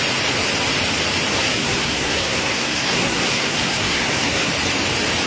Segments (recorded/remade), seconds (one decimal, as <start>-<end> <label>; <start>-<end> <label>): 0.0-1.3 recorded; 1.3-4.5 remade; 4.5-5.3 recorded